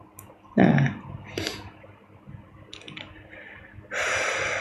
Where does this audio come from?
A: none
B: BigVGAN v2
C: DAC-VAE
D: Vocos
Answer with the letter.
A